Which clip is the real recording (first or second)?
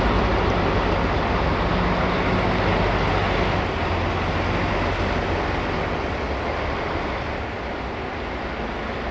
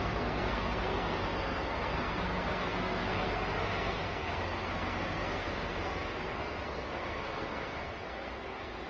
first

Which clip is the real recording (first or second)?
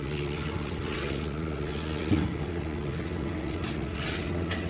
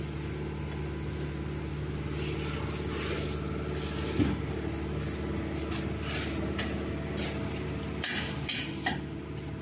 second